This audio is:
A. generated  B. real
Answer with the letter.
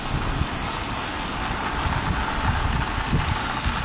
B